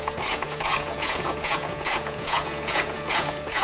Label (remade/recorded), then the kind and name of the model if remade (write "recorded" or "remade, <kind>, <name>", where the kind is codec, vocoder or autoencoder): remade, vocoder, Vocos